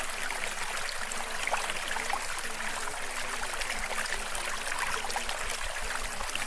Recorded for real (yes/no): yes